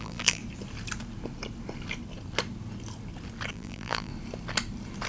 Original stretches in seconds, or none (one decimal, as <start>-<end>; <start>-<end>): 0.4-3.5; 4.1-5.1